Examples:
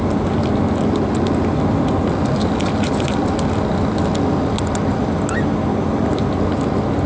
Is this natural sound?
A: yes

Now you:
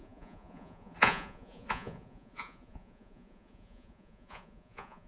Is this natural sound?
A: no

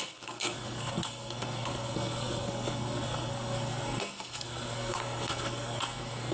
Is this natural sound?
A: no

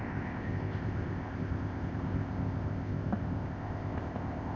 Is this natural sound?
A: no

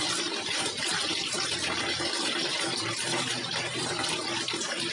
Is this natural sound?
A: no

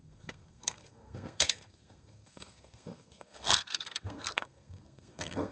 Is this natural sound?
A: no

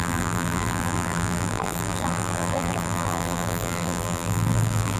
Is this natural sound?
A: no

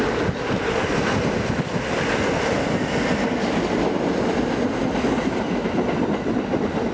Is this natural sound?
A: yes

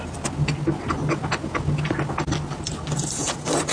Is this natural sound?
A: yes